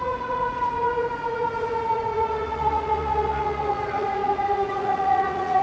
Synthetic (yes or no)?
yes